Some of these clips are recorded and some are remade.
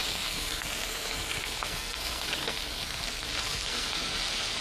remade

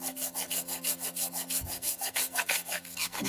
remade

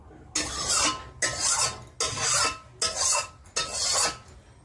recorded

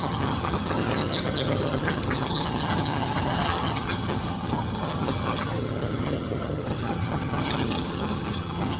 remade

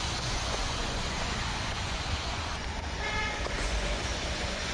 remade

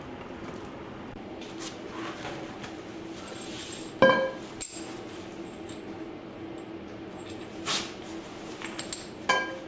recorded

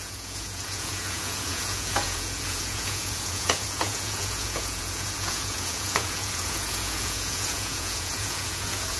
remade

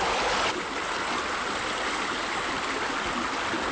recorded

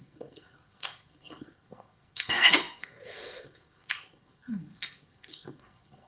remade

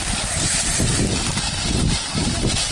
remade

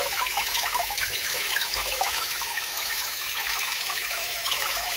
remade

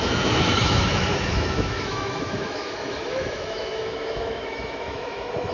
remade